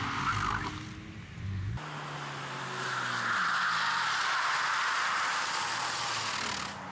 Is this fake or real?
real